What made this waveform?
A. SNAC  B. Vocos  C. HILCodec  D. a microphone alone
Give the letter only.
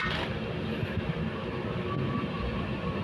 D